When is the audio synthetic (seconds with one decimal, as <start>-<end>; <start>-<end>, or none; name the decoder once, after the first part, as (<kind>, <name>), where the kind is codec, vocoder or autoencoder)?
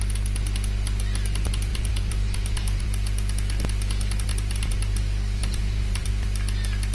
1.7-2.8 (vocoder, BigVGAN v2); 4.3-5.0; 5.4-6.1